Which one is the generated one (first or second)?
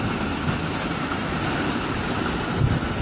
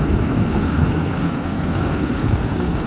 second